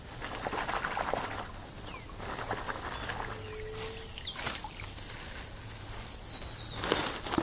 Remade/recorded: recorded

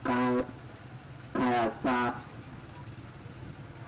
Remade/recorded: recorded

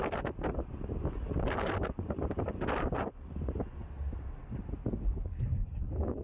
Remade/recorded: recorded